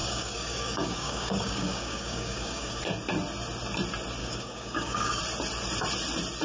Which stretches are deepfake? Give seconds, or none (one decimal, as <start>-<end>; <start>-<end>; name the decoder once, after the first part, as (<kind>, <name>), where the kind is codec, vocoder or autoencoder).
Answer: 0.0-2.8 (codec, DAC); 4.2-5.2